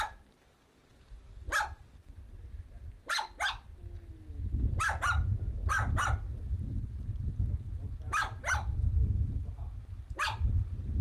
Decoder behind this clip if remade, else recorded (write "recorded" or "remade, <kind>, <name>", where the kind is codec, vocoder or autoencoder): recorded